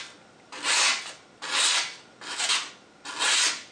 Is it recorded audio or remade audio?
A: recorded